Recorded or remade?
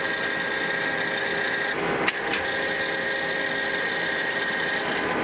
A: recorded